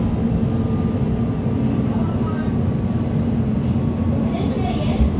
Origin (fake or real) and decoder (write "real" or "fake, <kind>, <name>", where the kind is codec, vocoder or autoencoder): real